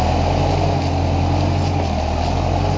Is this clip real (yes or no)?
yes